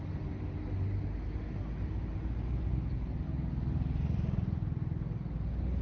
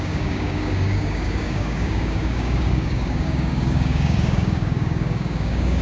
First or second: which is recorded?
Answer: first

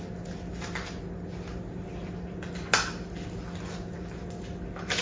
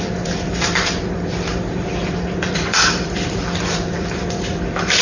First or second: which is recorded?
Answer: first